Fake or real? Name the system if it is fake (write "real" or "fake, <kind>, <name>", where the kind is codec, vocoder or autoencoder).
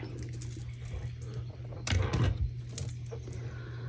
real